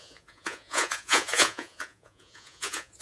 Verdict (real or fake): fake